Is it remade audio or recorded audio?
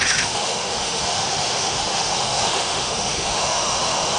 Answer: remade